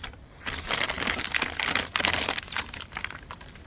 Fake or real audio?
real